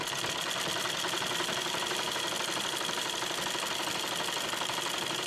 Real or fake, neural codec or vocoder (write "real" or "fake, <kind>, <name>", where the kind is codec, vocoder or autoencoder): fake, vocoder, BigVGAN v2